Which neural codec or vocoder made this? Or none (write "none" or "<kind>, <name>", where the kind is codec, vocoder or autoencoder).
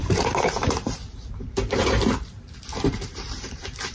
vocoder, BigVGAN v2